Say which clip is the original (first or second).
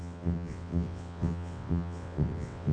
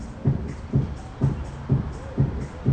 second